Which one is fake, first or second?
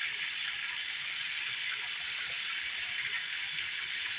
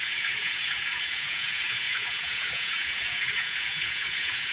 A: second